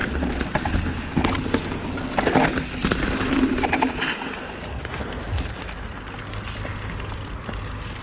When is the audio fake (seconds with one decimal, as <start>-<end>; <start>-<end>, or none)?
0.0-0.7; 2.8-5.0